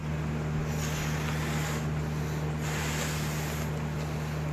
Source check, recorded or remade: recorded